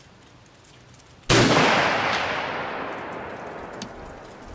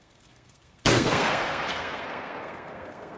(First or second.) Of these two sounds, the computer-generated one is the second